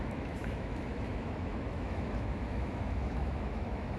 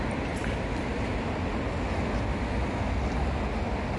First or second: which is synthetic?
first